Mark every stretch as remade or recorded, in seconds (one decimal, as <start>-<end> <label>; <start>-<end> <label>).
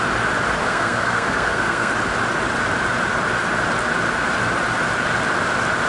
0.0-0.6 recorded; 0.6-1.9 remade; 1.9-5.9 recorded